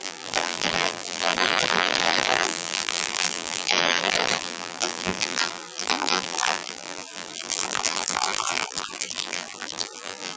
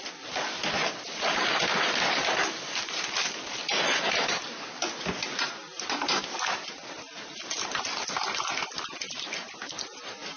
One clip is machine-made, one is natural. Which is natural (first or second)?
second